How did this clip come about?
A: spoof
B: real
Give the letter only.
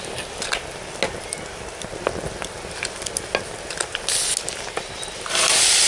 B